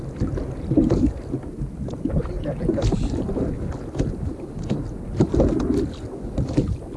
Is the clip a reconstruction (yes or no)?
no